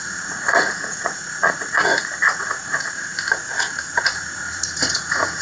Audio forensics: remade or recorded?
remade